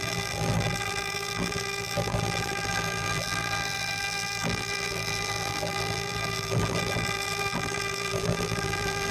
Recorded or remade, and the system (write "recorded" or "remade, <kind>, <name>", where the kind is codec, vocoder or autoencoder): remade, vocoder, BigVGAN v2